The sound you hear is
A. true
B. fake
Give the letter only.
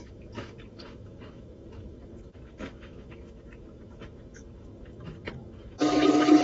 B